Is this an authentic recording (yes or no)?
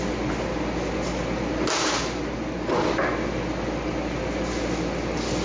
yes